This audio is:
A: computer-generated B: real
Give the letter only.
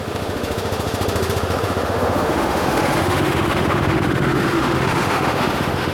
A